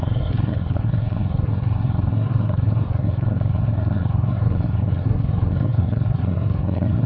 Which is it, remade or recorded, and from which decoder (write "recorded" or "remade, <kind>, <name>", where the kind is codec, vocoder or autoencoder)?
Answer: remade, codec, SNAC